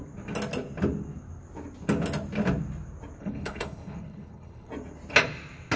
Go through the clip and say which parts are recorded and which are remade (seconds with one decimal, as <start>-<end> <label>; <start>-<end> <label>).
0.0-3.2 recorded; 3.2-4.7 remade; 4.7-5.8 recorded